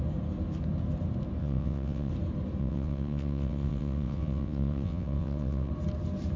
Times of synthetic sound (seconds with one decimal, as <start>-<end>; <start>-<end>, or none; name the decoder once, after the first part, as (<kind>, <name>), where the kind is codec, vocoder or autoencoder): 1.4-2.1 (vocoder, WaveNeXt); 2.6-5.7